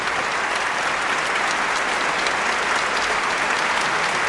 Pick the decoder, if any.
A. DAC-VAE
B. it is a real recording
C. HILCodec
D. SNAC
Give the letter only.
B